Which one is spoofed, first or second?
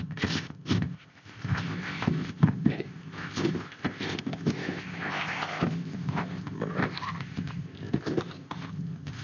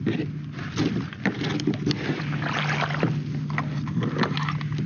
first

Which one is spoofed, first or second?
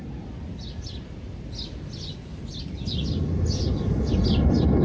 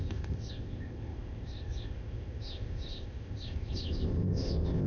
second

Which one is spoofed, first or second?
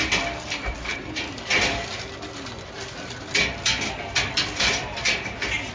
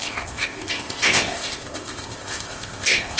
second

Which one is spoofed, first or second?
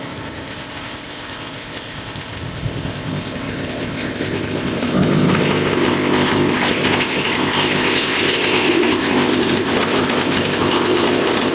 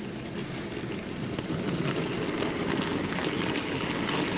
first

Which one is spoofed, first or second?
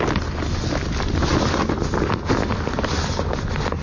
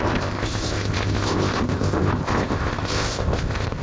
second